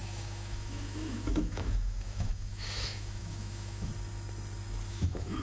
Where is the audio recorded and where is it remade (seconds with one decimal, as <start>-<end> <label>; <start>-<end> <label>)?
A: 0.0-3.9 remade; 3.9-4.9 recorded; 4.9-5.4 remade